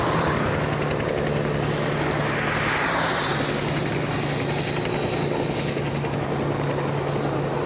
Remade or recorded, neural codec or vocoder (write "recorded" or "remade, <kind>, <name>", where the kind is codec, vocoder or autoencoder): recorded